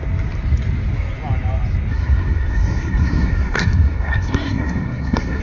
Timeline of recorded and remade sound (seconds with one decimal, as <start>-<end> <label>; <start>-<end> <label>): 0.0-1.9 recorded; 1.9-5.4 remade